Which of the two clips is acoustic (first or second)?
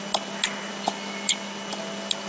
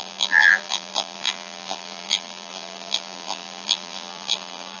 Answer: first